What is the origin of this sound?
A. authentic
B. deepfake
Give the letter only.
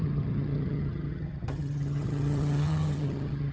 B